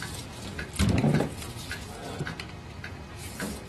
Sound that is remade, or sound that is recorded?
recorded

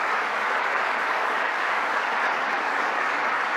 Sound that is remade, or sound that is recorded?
remade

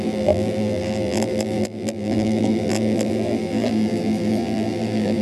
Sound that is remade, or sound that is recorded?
remade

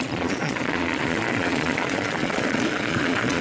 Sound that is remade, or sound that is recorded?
remade